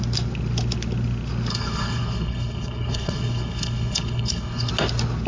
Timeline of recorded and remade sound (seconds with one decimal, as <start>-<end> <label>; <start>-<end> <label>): 0.0-1.5 recorded; 1.5-4.7 remade; 4.7-5.3 recorded